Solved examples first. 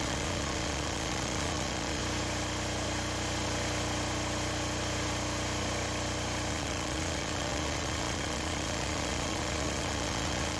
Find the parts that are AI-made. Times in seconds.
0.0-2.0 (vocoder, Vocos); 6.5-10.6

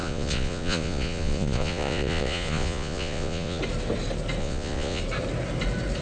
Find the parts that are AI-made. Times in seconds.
0.0-3.6 (vocoder, Vocos); 4.4-5.0

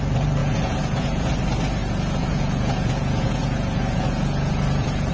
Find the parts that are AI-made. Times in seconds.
0.4-1.3 (vocoder, Vocos); 1.8-5.1

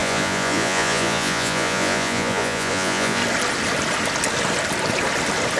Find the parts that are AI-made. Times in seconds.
0.0-3.2 (vocoder, Vocos)

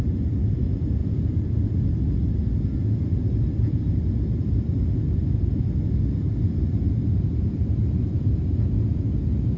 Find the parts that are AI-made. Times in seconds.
none